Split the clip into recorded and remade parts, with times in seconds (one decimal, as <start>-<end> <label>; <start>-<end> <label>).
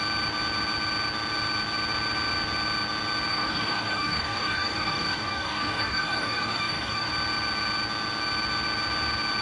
0.0-3.3 recorded; 3.3-7.1 remade; 7.1-9.4 recorded